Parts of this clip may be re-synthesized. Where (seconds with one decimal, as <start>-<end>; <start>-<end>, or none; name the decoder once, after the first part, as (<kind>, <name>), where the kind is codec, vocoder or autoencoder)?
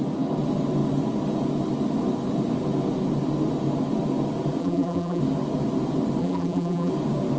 4.6-5.2 (vocoder, BigVGAN v2); 6.2-6.9